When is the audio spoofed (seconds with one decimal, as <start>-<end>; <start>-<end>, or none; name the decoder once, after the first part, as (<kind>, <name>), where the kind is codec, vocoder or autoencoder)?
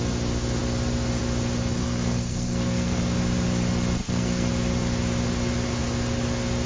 1.8-3.0 (codec, SNAC); 4.0-4.5